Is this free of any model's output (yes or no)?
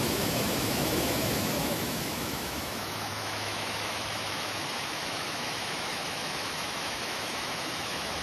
no